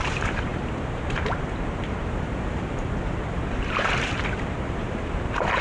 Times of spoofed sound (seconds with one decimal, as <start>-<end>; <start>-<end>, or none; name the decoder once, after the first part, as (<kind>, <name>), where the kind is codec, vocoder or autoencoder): 0.0-5.6 (vocoder, BigVGAN v2)